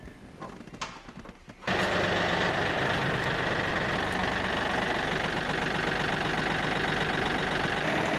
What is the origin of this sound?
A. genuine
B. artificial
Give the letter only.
A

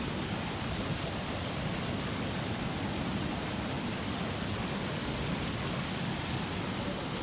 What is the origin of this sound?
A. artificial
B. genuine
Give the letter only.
B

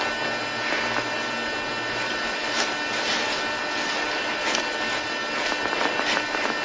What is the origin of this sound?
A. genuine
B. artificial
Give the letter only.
A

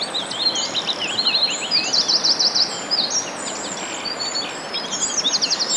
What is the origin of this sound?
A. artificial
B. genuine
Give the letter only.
B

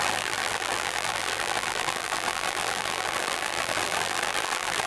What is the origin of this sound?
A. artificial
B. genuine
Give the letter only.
A